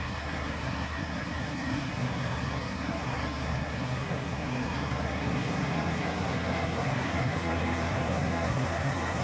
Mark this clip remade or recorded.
remade